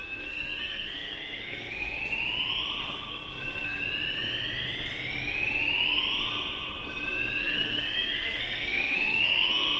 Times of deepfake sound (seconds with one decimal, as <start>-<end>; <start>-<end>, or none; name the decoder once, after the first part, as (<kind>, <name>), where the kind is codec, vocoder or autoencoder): 0.0-2.0 (codec, SNAC); 2.8-3.8; 7.4-9.8